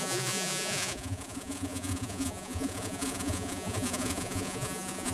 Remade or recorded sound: remade